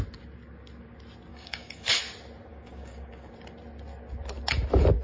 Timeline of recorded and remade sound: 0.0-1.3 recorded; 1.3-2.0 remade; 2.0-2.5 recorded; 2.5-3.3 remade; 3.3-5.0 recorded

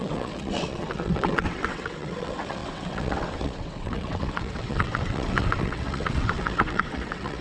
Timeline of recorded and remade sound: 0.0-7.4 remade

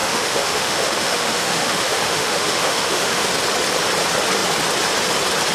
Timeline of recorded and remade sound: 0.0-3.3 remade; 3.3-5.5 recorded

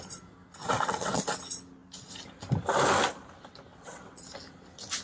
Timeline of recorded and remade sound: 0.0-0.6 recorded; 0.6-1.2 remade; 1.2-3.7 recorded; 3.7-4.3 remade; 4.3-5.0 recorded

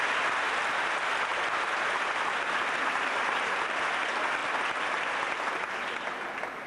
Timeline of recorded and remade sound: 0.0-1.3 recorded; 1.3-4.0 remade; 4.0-6.7 recorded